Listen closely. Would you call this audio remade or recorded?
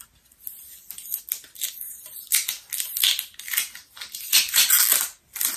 recorded